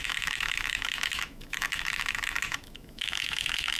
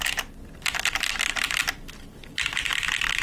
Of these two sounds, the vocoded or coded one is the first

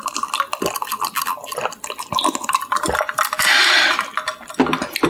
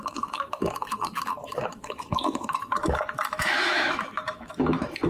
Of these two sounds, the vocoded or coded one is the second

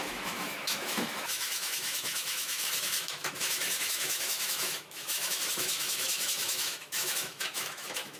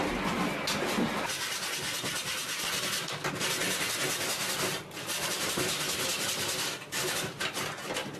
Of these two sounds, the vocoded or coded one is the first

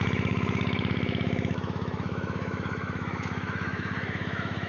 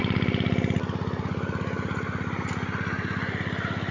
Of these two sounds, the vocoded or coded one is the first